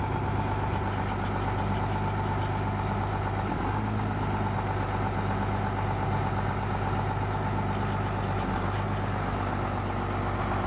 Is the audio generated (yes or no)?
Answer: no